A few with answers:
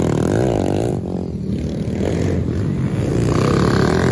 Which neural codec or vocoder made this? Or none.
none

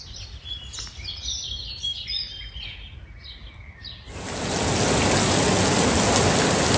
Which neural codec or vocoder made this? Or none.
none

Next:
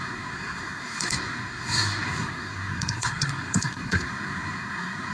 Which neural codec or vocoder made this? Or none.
codec, SNAC